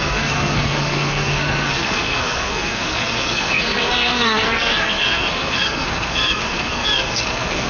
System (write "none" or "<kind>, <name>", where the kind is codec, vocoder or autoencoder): codec, SNAC